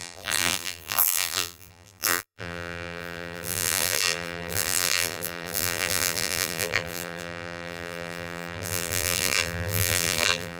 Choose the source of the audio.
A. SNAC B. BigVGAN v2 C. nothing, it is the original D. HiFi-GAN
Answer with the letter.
B